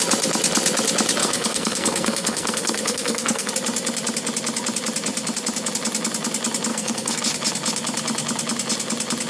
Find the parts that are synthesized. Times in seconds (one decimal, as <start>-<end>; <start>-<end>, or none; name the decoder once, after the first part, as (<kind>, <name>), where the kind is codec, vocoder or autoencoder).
1.2-3.5 (codec, SNAC); 6.7-7.2